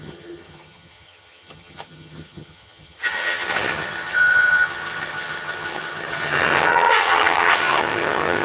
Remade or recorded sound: remade